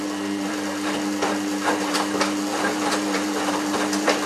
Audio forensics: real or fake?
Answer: fake